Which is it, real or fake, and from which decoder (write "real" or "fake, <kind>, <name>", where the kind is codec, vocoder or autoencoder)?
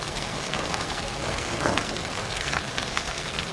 fake, codec, SNAC